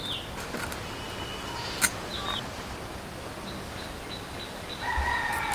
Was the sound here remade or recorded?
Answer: recorded